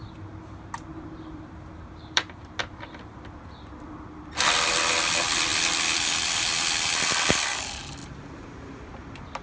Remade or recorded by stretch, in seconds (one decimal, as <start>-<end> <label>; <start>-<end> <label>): 0.0-0.9 recorded; 0.9-2.6 remade; 2.6-8.0 recorded; 8.0-8.9 remade; 8.9-9.4 recorded